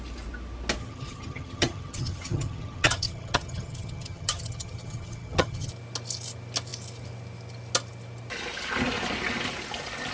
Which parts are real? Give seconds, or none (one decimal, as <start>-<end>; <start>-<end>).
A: 0.0-0.8; 5.7-10.1